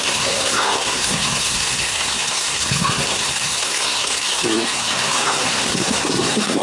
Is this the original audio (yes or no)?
no